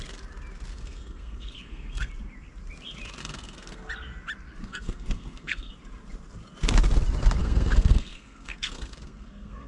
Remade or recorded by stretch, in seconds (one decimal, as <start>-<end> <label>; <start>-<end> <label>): 0.0-0.7 recorded; 0.7-2.1 remade; 2.1-3.2 recorded; 3.2-3.9 remade; 3.9-4.6 recorded; 4.6-5.7 remade; 5.7-7.4 recorded; 7.4-9.7 remade